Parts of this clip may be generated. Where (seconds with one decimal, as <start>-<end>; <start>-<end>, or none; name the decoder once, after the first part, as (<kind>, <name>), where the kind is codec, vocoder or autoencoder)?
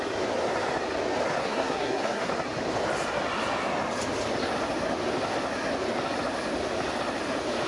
1.4-2.3 (codec, SNAC)